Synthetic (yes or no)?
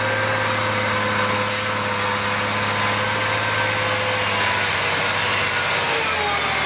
no